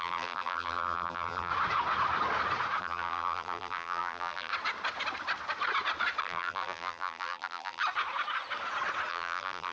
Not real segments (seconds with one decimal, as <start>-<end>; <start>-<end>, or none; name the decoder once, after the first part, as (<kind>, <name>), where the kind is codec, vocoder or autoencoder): 0.0-1.5 (vocoder, BigVGAN v2); 2.8-4.5; 6.2-7.8; 9.1-9.7